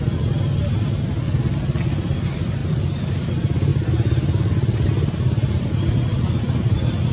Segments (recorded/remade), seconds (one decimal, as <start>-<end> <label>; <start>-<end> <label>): 0.0-2.6 recorded; 2.6-3.3 remade; 3.3-3.7 recorded; 3.7-6.4 remade; 6.4-7.1 recorded